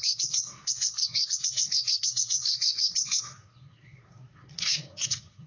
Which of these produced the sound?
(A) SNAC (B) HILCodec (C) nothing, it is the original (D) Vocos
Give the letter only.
A